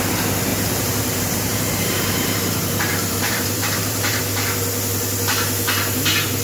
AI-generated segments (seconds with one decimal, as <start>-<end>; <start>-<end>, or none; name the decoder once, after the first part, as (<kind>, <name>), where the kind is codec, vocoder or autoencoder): 0.5-4.2 (vocoder, BigVGAN v2)